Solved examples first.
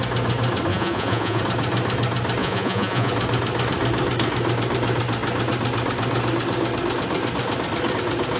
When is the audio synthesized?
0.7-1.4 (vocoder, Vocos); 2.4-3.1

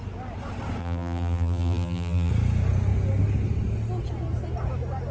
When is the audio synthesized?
0.8-2.3 (vocoder, BigVGAN v2)

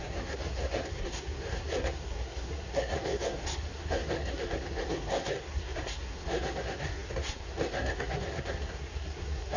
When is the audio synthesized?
0.0-9.6 (codec, SNAC)

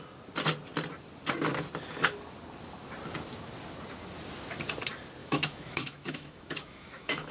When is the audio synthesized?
5.2-7.3 (autoencoder, DAC-VAE)

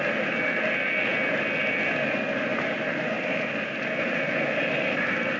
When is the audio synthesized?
2.5-5.4 (vocoder, BigVGAN v2)

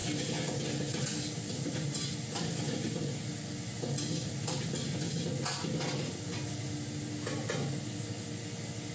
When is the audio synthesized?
none

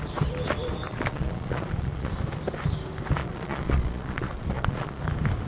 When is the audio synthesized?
0.9-2.1 (vocoder, Vocos); 3.2-5.0